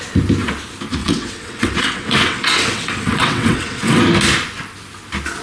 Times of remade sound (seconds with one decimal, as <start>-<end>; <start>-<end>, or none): 1.0-4.0